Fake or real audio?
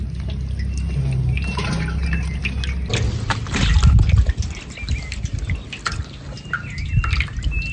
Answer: real